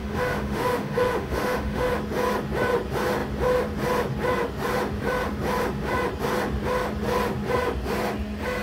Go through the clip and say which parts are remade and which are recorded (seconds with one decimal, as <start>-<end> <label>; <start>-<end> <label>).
0.0-1.9 remade; 1.9-8.6 recorded